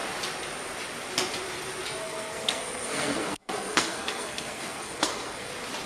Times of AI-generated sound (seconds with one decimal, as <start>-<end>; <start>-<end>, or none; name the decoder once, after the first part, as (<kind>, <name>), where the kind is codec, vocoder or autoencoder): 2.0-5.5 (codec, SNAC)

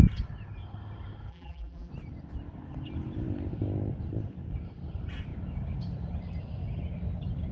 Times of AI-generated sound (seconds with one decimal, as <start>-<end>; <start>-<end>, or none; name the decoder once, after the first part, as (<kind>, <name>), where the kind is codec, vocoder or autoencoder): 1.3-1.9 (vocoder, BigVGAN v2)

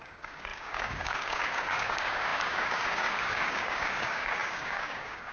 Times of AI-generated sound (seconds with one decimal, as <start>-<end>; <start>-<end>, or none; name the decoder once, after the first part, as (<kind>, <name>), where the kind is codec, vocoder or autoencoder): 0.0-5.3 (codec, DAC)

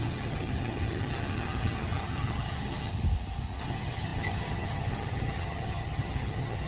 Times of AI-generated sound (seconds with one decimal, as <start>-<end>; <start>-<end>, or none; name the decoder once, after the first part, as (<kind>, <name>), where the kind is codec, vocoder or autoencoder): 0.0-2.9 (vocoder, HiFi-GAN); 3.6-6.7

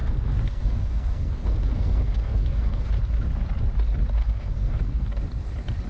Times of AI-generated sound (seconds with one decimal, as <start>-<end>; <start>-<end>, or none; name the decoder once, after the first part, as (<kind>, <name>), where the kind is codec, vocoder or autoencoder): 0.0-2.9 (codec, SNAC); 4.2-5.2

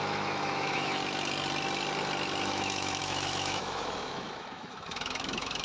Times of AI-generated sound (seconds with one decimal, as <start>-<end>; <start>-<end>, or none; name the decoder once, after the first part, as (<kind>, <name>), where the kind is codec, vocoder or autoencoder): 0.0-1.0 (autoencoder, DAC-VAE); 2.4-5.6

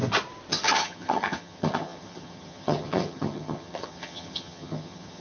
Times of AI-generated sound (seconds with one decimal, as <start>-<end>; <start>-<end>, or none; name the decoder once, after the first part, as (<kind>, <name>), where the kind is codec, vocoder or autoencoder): 0.5-5.2 (vocoder, HiFi-GAN)

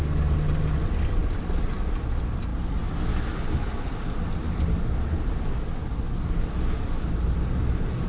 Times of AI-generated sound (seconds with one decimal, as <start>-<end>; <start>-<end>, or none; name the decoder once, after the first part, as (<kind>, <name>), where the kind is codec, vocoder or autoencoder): none